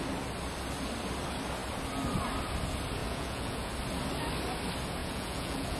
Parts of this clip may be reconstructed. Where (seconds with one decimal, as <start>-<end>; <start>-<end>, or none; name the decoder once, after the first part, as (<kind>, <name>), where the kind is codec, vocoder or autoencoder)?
3.0-3.7 (vocoder, Vocos); 5.0-5.8